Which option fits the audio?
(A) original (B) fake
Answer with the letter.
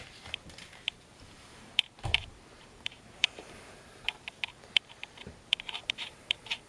B